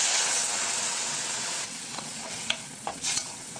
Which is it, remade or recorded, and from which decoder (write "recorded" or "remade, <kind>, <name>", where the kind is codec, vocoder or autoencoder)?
remade, vocoder, WaveNeXt